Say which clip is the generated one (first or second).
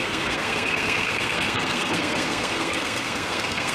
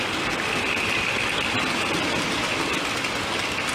first